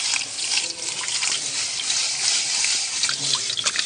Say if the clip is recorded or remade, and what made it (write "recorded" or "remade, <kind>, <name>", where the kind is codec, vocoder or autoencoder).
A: recorded